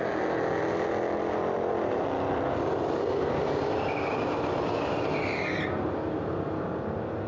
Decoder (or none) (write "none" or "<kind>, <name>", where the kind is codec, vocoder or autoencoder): none